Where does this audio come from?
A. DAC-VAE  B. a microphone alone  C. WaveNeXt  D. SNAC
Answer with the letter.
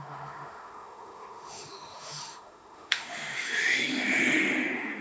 A